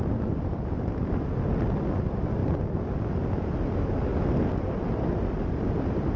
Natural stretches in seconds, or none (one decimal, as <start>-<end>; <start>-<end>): 0.0-6.2